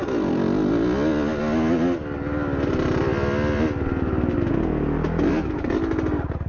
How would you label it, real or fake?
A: real